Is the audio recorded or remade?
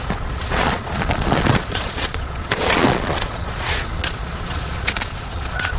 remade